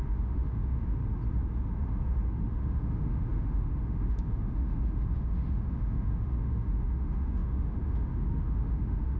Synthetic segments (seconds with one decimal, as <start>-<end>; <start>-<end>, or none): 0.0-1.0; 2.3-9.2